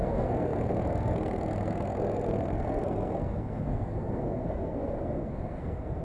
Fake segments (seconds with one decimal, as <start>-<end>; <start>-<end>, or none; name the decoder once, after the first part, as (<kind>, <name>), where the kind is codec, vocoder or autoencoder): 0.0-6.0 (codec, SNAC)